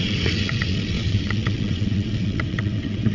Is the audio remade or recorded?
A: remade